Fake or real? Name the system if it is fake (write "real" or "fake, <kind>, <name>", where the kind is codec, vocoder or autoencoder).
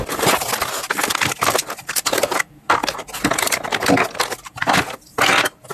real